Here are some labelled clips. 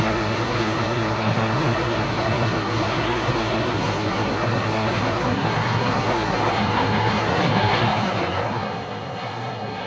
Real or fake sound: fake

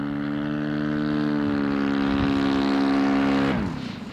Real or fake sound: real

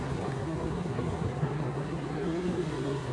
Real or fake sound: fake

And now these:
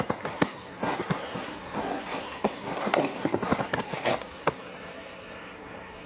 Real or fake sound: fake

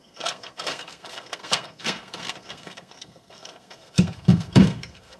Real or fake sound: fake